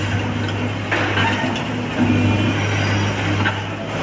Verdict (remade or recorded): recorded